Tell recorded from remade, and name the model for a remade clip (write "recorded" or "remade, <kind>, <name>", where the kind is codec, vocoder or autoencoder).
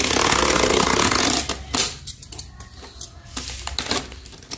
recorded